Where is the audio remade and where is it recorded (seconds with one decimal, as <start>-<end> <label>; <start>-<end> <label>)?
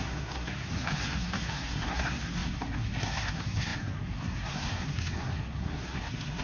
0.0-6.4 remade